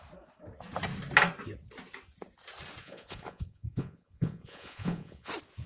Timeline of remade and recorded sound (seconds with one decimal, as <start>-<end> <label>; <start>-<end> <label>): 0.0-2.8 recorded; 2.8-5.3 remade; 5.3-5.7 recorded